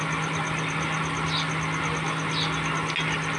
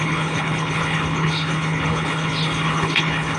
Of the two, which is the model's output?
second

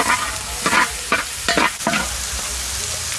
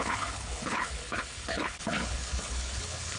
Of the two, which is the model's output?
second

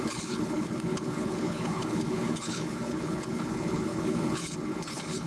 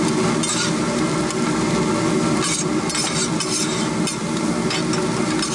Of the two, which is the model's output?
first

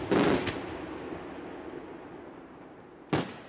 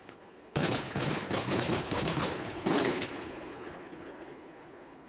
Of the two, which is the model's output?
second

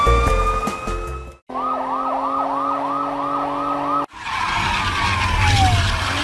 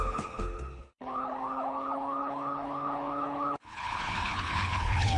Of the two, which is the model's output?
second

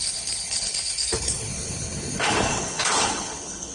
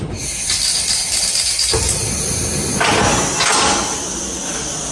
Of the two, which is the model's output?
first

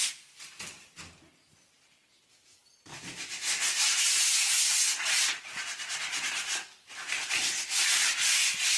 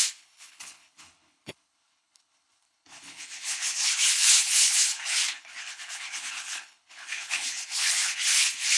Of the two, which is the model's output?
second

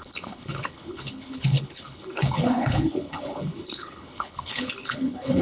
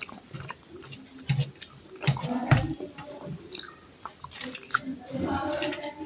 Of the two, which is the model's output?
first